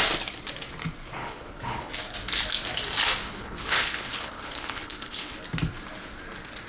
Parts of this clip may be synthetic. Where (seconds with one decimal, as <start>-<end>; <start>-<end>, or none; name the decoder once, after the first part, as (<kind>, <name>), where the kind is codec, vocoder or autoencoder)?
1.2-1.9 (codec, HILCodec); 3.2-5.4